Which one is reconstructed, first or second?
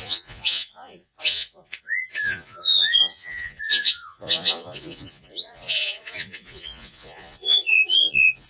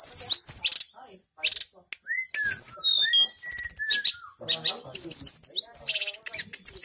first